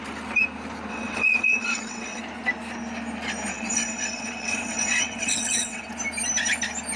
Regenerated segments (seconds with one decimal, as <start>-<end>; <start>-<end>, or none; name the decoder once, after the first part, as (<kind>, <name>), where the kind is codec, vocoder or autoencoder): 0.9-2.2 (vocoder, WaveNeXt); 3.5-5.9